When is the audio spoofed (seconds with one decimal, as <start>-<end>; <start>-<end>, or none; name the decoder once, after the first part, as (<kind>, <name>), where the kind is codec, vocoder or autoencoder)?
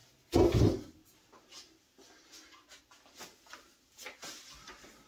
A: none